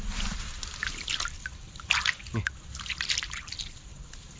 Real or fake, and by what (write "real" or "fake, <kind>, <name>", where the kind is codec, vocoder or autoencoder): real